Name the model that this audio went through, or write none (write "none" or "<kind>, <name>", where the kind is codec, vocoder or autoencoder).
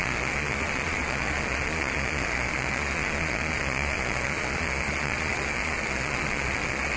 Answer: vocoder, Vocos